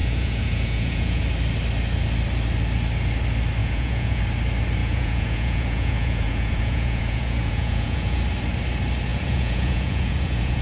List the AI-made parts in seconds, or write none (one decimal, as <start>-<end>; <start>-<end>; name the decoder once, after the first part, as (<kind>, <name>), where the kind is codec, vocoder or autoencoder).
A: 0.0-1.2 (vocoder, Vocos); 3.6-4.2; 4.8-8.2; 9.1-10.6